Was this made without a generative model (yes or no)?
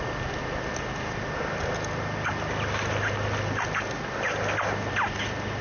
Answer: yes